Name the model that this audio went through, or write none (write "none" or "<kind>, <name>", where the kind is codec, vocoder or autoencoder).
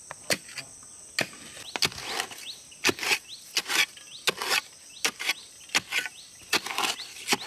none